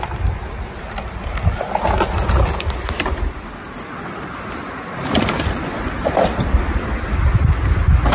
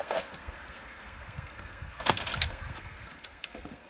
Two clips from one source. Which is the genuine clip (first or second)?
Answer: first